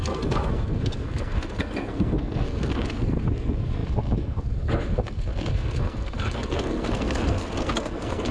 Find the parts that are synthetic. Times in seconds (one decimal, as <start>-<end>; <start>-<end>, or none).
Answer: 0.0-8.3